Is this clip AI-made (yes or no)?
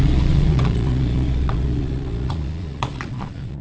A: yes